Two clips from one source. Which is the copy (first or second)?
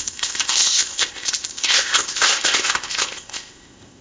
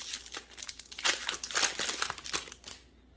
first